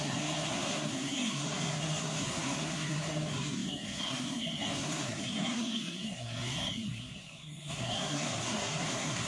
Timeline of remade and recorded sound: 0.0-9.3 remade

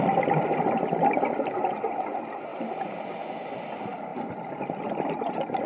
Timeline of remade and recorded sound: 0.0-2.5 recorded; 2.5-3.1 remade; 3.1-4.1 recorded; 4.1-5.3 remade; 5.3-5.7 recorded